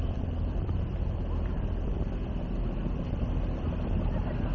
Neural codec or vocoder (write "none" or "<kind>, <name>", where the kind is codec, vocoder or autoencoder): vocoder, BigVGAN v2